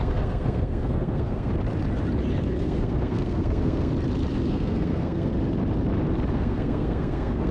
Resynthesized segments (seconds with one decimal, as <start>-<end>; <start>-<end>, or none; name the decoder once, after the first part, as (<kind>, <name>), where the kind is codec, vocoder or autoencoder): 0.0-1.5 (codec, SNAC); 2.6-3.9; 4.5-5.3; 6.3-7.5